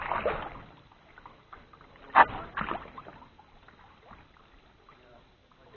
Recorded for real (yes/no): yes